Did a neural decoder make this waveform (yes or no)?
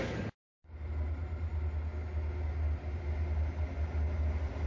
no